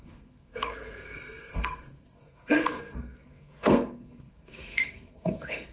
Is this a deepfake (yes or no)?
yes